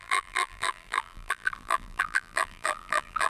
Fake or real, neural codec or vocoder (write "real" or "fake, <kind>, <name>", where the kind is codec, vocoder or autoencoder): fake, vocoder, BigVGAN v2